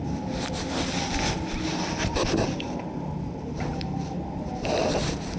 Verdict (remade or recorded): recorded